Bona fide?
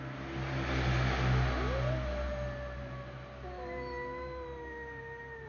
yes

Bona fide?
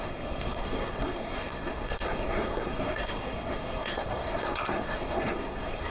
no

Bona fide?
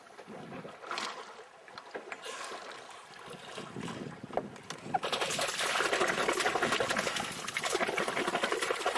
yes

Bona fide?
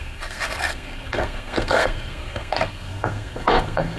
no